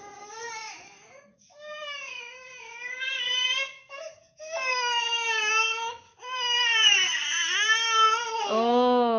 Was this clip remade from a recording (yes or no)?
yes